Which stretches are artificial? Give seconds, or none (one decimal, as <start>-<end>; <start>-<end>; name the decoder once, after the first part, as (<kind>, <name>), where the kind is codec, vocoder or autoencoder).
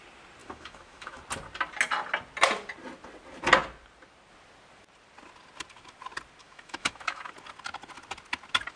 0.4-1.2 (autoencoder, DAC-VAE); 6.4-7.3